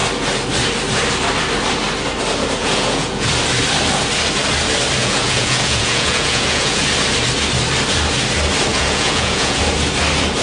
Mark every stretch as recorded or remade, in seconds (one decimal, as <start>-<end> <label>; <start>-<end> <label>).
0.0-2.6 recorded; 2.6-3.3 remade; 3.3-5.0 recorded; 5.0-6.8 remade; 6.8-8.7 recorded; 8.7-9.6 remade; 9.6-10.4 recorded